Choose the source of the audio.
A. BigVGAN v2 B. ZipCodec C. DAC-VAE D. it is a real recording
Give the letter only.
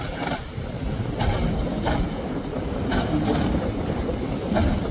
D